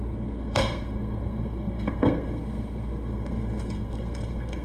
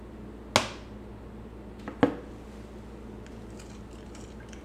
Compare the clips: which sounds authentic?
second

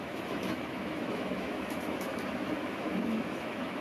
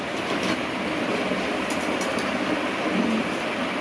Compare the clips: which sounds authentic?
second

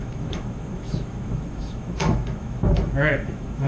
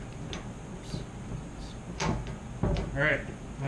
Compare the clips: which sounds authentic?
second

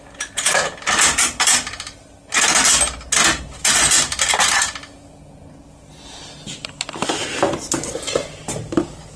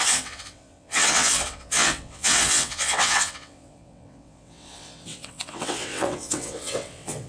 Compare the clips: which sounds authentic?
first